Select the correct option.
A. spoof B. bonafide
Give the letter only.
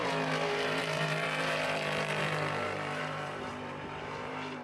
A